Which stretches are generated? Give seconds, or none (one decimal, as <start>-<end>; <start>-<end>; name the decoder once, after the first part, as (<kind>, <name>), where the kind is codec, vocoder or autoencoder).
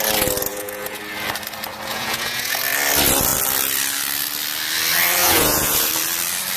0.5-1.0 (vocoder, Vocos); 1.9-2.6; 5.2-5.9